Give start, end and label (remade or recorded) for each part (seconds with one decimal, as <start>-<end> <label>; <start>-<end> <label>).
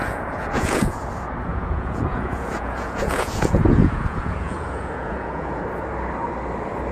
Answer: 0.0-1.0 remade; 1.0-1.5 recorded; 1.5-5.6 remade; 5.6-6.9 recorded